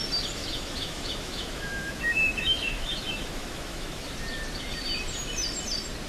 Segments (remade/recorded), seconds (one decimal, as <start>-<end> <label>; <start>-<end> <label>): 0.0-0.4 recorded; 0.4-4.1 remade; 4.1-6.1 recorded